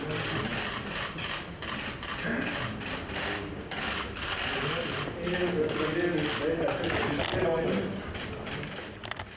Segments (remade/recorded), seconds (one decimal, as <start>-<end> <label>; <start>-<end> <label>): 0.0-9.4 recorded